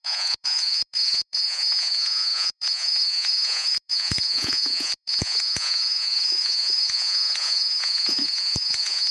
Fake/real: fake